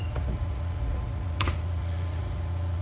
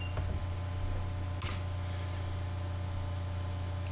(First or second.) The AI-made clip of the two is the first